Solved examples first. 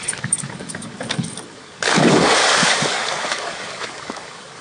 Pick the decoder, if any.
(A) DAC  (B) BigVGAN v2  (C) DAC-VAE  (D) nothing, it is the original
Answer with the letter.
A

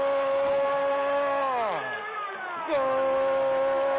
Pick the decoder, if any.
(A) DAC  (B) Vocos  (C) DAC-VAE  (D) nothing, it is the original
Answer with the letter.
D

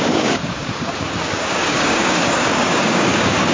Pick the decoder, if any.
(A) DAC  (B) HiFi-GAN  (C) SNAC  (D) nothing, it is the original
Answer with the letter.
A